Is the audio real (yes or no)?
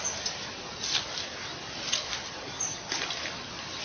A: yes